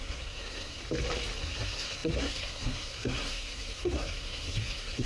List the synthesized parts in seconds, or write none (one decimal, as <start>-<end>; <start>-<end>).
0.0-0.8; 1.4-5.1